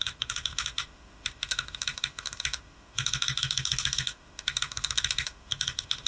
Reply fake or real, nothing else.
fake